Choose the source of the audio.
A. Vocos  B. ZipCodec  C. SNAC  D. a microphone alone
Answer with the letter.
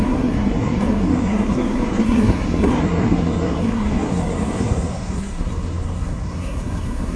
C